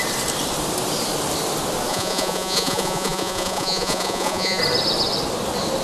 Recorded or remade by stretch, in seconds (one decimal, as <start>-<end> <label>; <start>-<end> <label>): 0.0-1.9 recorded; 1.9-4.6 remade; 4.6-5.8 recorded